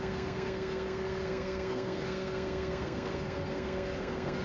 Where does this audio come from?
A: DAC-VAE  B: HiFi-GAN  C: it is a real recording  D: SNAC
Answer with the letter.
D